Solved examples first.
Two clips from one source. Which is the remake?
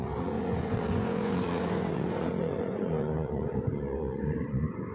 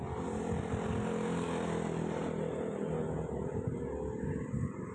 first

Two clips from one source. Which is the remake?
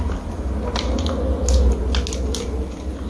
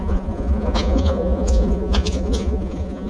second